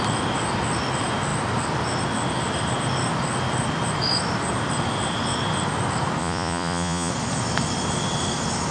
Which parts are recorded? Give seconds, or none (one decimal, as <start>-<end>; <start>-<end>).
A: 0.0-6.2; 7.1-8.7